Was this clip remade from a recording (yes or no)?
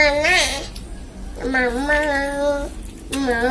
no